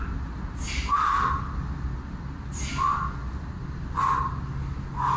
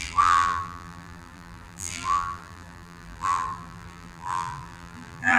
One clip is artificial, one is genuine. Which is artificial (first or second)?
second